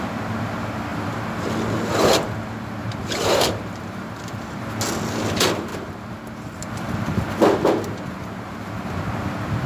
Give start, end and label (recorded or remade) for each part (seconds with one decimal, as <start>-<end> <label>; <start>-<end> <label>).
0.0-2.8 recorded; 2.8-4.6 remade; 4.6-9.7 recorded